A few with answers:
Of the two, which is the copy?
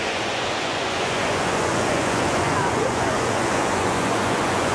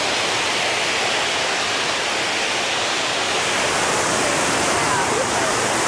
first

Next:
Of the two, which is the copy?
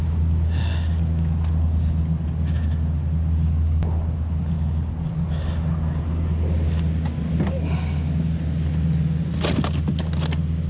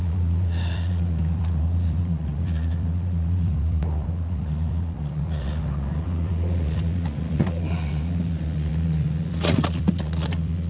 second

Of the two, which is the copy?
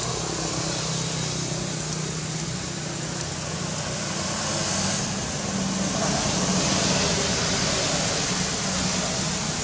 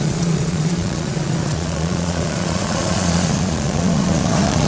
second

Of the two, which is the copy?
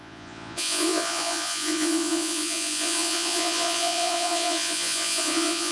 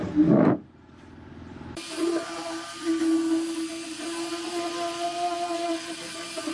first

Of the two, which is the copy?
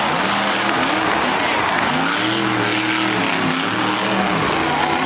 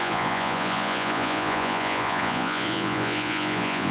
second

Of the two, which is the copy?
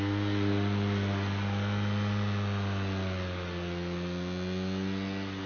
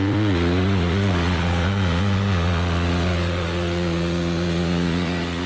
second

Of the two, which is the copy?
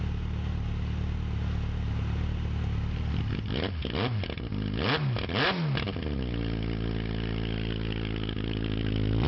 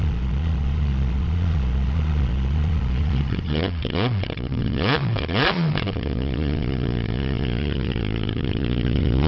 second